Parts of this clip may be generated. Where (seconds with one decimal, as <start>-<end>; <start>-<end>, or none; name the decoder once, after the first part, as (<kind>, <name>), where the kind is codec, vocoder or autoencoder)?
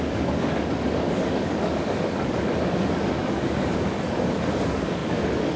0.0-5.6 (codec, DAC)